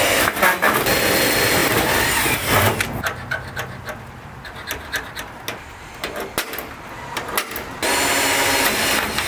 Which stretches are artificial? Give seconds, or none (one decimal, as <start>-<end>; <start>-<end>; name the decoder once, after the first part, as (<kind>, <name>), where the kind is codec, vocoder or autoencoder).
none